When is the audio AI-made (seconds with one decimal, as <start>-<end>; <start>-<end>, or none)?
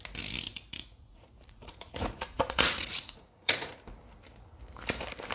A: 0.5-3.7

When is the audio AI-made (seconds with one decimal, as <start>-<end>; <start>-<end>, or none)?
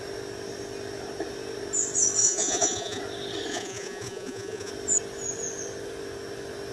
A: 2.2-3.0; 3.5-4.7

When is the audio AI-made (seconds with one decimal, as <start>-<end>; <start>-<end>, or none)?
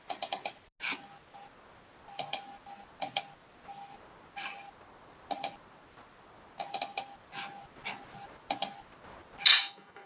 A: 9.5-10.1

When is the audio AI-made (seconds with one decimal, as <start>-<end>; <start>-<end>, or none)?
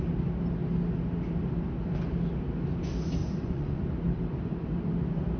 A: 3.2-3.8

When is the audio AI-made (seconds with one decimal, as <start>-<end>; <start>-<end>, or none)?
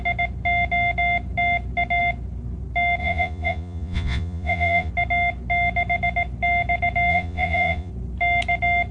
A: 3.0-4.9; 7.1-7.9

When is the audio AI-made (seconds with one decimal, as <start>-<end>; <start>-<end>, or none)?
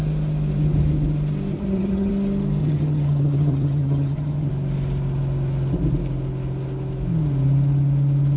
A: 1.5-2.1; 2.6-4.5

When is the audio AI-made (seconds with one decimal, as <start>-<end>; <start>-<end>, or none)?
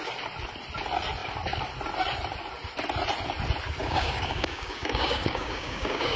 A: 3.8-6.2